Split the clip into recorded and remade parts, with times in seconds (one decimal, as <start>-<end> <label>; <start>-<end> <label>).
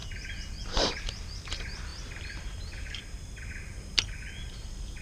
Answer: 0.0-5.0 recorded